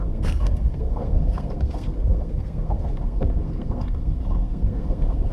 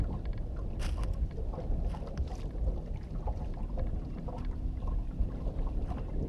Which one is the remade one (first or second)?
first